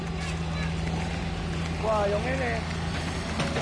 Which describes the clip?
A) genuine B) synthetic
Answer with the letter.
A